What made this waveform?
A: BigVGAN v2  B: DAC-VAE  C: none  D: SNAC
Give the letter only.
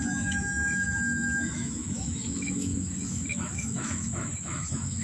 B